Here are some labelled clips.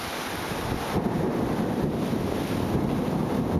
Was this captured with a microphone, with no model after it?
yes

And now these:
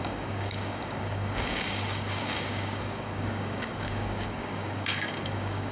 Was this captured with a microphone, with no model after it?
no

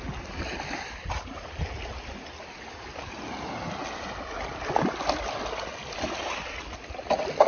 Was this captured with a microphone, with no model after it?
yes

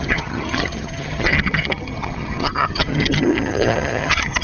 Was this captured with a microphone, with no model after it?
no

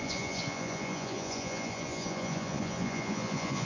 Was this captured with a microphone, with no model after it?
no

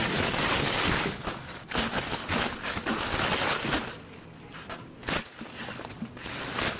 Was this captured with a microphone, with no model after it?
yes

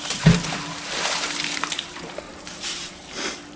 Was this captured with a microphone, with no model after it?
no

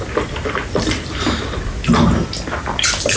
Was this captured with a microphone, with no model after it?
yes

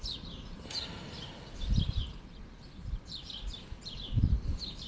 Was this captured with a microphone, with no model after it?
yes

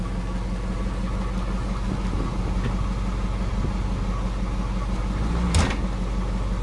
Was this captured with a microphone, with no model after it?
yes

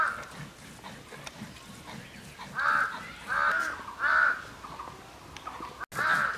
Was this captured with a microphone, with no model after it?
yes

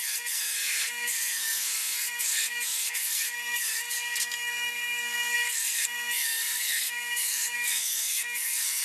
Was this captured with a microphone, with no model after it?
no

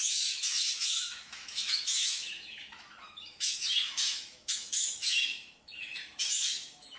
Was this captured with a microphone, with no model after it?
no